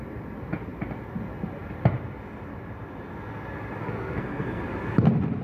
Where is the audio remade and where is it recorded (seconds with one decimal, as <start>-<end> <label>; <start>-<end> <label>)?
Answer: 0.0-3.8 recorded; 3.8-4.6 remade; 4.6-5.4 recorded